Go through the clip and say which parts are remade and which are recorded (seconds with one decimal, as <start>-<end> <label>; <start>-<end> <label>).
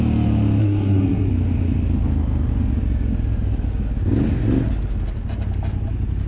0.0-0.6 recorded; 0.6-1.3 remade; 1.3-6.3 recorded